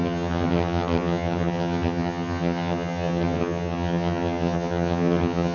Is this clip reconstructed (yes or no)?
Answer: yes